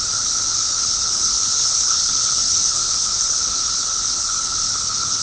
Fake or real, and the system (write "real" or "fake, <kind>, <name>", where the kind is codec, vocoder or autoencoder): fake, codec, HILCodec